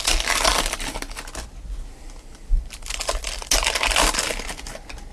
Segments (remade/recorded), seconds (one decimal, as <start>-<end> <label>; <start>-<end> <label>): 0.0-0.5 recorded; 0.5-1.2 remade; 1.2-5.1 recorded